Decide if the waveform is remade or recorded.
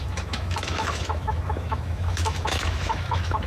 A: remade